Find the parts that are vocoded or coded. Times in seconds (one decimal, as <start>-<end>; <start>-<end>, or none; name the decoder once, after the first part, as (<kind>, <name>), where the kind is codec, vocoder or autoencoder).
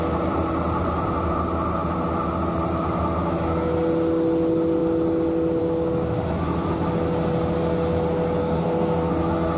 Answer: 8.4-9.1 (codec, SNAC)